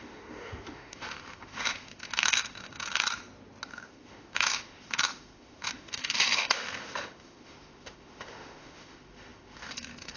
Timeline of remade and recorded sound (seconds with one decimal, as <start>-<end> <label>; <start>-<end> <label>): 0.0-3.2 remade; 3.2-3.7 recorded; 3.7-10.2 remade